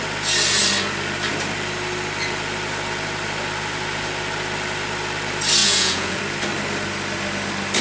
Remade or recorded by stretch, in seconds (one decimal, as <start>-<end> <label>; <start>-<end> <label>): 0.0-5.6 recorded; 5.6-6.2 remade; 6.2-7.8 recorded